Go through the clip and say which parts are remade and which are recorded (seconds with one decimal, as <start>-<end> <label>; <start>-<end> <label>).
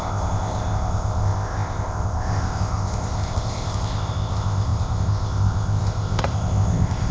0.0-7.1 remade